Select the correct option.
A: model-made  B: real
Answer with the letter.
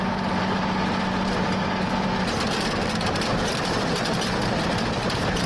B